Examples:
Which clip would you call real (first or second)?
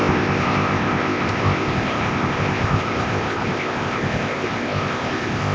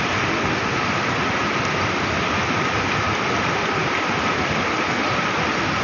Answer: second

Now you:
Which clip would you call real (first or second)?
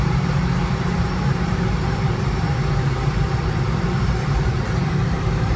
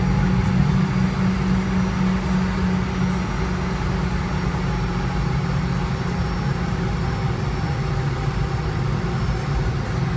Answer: second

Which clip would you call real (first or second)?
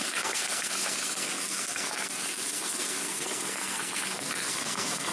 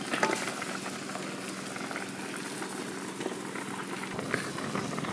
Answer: second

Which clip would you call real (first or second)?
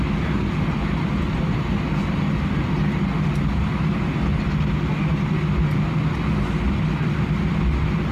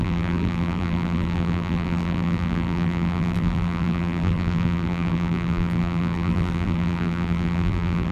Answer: first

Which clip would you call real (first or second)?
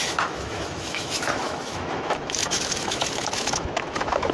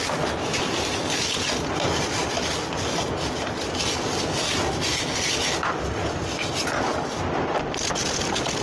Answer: second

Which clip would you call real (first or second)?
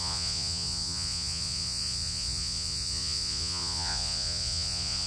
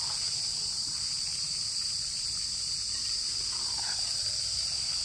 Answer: second